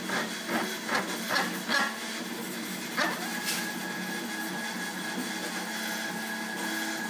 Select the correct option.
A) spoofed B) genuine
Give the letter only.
B